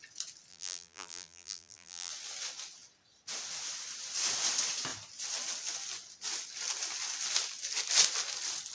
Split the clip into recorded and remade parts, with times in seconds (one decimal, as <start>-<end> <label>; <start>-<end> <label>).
0.0-0.5 recorded; 0.5-2.1 remade; 2.1-8.7 recorded